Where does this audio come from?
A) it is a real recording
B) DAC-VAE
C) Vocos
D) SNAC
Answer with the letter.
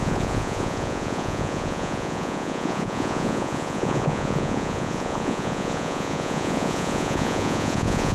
C